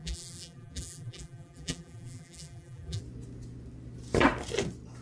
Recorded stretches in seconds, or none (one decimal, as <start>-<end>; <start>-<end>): 3.0-5.0